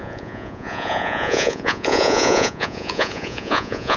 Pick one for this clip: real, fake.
fake